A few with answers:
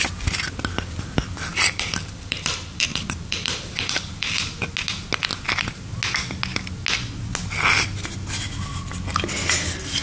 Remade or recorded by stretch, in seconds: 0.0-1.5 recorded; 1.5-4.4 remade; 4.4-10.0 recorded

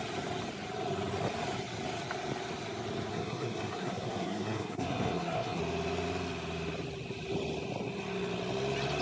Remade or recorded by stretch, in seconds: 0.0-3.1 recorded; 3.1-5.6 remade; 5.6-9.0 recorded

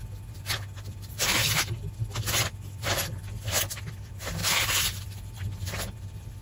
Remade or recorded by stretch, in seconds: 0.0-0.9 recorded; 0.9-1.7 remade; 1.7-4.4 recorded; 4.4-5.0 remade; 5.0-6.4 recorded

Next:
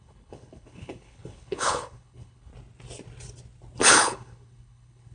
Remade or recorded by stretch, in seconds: 0.0-2.5 remade; 2.5-3.8 recorded; 3.8-5.1 remade